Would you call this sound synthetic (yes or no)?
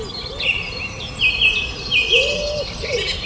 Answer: no